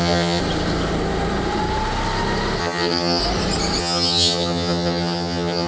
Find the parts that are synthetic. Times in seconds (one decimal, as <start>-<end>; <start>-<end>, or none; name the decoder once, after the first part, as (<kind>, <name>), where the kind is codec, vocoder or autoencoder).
0.0-0.4 (vocoder, HiFi-GAN); 2.6-3.2; 3.8-5.7